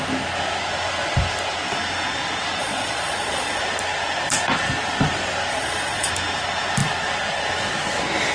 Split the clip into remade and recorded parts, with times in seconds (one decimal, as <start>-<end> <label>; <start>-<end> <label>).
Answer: 0.0-2.6 recorded; 2.6-3.6 remade; 3.6-5.5 recorded; 5.5-6.1 remade; 6.1-8.3 recorded